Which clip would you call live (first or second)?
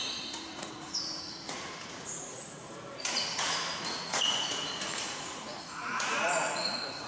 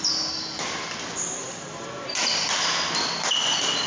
second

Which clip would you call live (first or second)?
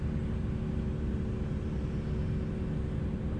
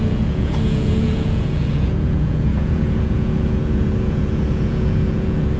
first